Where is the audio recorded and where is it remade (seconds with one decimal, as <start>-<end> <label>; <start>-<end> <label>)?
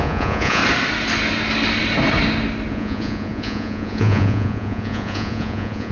0.0-0.6 remade; 0.6-2.7 recorded; 2.7-5.9 remade